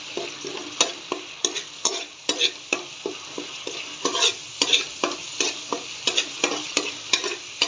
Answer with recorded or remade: recorded